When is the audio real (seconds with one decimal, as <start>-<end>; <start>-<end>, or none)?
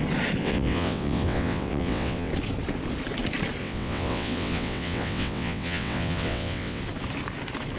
0.0-0.4; 2.3-3.6; 6.8-7.8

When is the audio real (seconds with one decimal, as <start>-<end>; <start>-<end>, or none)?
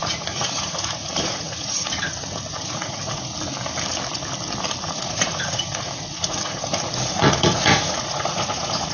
3.3-4.8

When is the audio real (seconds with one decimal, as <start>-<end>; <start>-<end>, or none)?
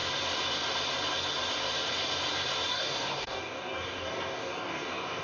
0.0-2.7